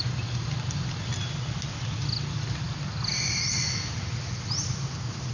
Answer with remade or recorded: recorded